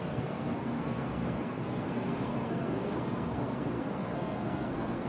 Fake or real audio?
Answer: fake